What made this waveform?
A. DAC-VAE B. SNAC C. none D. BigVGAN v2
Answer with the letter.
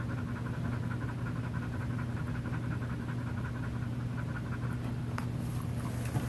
C